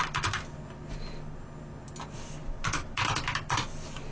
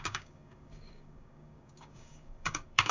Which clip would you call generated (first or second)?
second